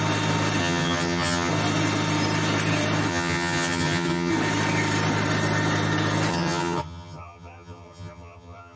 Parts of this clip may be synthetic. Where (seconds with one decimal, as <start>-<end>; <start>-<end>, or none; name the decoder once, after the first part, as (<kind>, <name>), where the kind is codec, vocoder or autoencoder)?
0.6-1.5 (vocoder, HiFi-GAN); 3.1-4.3; 6.3-8.8